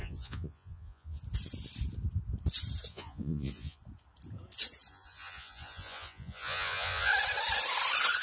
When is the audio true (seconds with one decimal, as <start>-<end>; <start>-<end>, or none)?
1.2-2.9; 3.8-4.9; 7.1-8.2